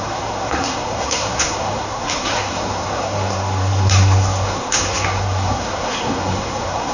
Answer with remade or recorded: remade